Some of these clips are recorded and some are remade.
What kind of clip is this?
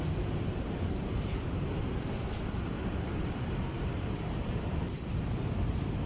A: remade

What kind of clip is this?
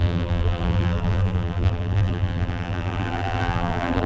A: remade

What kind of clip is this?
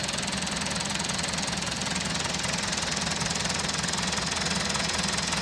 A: recorded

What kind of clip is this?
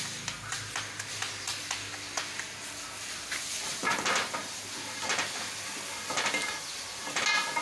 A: recorded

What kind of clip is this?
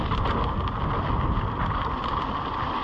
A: recorded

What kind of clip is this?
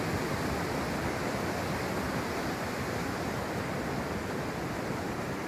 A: recorded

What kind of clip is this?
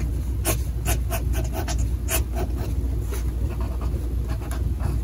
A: recorded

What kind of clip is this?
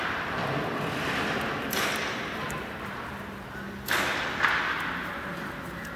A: recorded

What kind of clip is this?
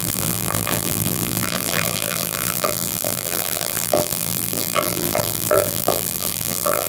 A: remade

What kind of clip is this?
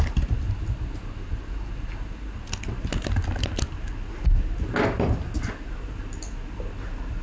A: recorded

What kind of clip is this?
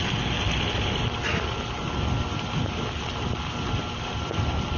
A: recorded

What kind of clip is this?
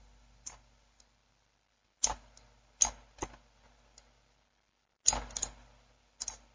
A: recorded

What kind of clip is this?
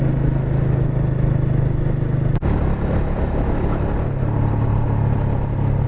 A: recorded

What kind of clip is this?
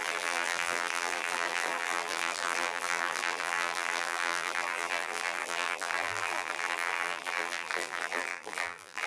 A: remade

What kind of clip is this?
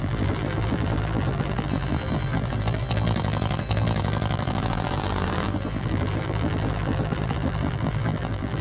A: remade